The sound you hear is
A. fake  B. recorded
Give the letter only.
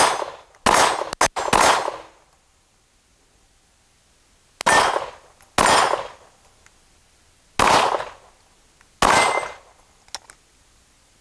B